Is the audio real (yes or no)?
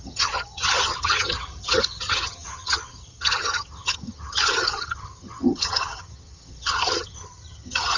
no